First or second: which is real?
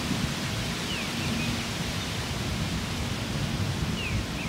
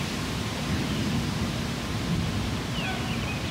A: first